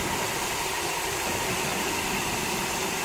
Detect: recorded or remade recorded